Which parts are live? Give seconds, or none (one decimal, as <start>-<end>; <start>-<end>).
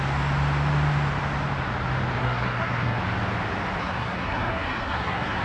0.0-2.2; 3.0-3.8